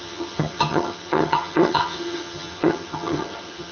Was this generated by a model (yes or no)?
yes